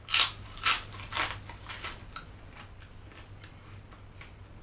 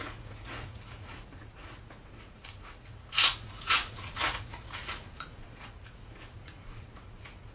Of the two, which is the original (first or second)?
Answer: first